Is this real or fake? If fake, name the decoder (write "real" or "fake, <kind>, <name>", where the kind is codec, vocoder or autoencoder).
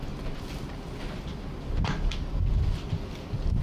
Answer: real